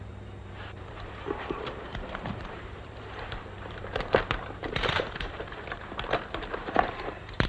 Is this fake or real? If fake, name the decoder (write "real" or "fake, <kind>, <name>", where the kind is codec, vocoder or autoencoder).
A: fake, vocoder, BigVGAN v2